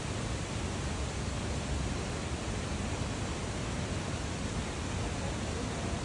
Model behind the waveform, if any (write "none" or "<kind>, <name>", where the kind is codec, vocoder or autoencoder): none